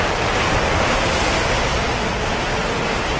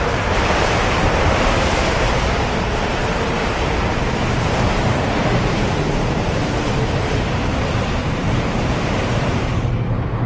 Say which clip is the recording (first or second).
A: first